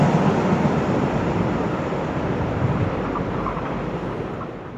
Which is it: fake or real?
real